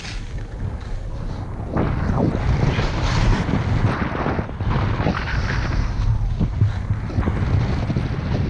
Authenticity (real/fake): real